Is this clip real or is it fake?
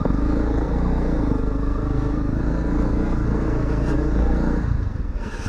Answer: fake